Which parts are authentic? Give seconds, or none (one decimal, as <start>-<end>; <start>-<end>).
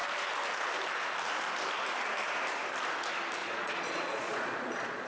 0.0-3.4